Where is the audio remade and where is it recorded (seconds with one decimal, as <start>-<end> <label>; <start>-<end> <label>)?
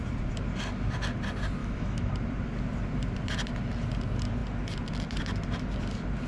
0.0-1.6 recorded; 1.6-2.1 remade; 2.1-6.3 recorded